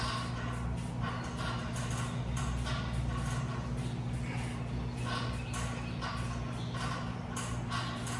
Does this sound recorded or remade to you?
recorded